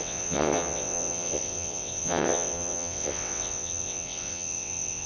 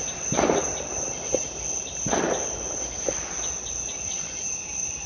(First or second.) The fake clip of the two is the first